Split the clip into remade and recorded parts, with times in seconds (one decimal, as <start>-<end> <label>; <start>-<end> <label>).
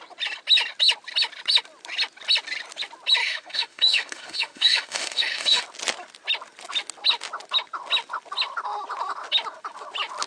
0.0-3.2 recorded; 3.2-5.6 remade; 5.6-10.3 recorded